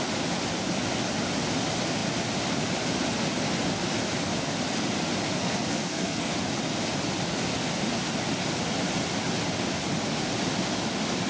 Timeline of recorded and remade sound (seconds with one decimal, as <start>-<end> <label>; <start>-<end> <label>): 0.0-5.4 recorded; 5.4-6.3 remade; 6.3-11.3 recorded